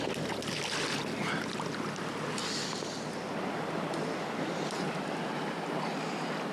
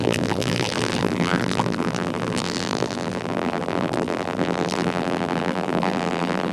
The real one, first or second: first